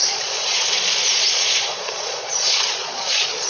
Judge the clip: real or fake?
fake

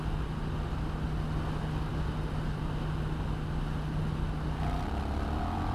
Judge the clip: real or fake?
real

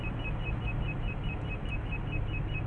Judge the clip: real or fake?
real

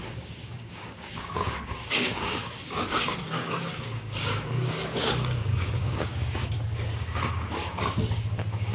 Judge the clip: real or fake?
fake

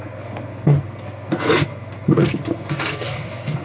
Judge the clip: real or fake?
fake